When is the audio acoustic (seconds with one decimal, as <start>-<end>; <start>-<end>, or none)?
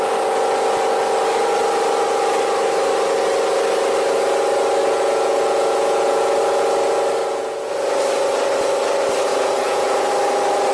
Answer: 0.0-4.8; 6.4-7.2; 7.7-9.3; 10.1-10.7